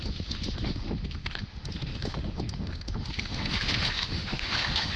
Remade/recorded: remade